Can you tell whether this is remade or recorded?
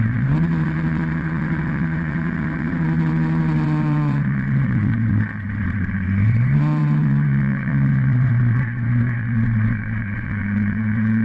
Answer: remade